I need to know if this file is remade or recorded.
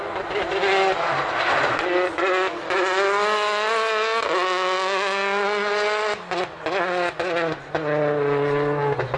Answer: recorded